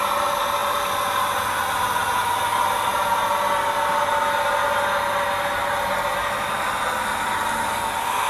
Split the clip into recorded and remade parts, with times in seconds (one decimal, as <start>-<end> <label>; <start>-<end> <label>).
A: 0.0-8.3 recorded